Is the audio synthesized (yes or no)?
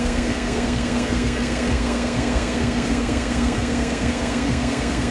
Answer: yes